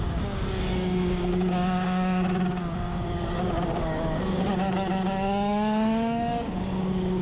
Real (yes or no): no